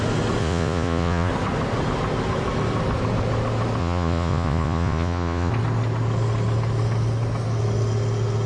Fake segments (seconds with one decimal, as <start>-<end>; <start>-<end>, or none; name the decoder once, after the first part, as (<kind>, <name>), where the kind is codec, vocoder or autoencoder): 0.4-1.3 (vocoder, Vocos); 3.8-5.5